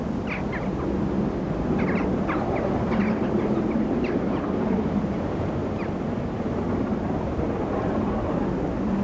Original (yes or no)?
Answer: yes